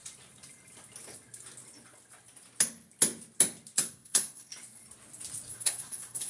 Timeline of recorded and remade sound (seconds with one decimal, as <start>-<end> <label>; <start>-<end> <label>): 0.0-3.8 recorded; 3.8-4.5 remade; 4.5-5.5 recorded; 5.5-6.3 remade